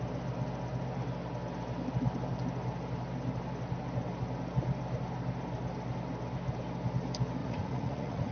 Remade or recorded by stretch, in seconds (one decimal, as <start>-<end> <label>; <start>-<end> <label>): 0.0-7.4 recorded; 7.4-8.3 remade

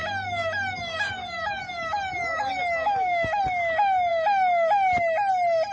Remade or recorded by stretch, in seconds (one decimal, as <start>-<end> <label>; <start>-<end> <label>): 0.0-3.4 remade; 3.4-5.7 recorded

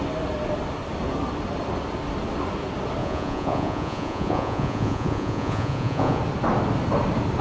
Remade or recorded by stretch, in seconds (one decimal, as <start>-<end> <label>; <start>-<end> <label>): 0.0-3.0 recorded; 3.0-6.2 remade; 6.2-7.4 recorded